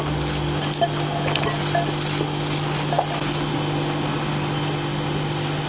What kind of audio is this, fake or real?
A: real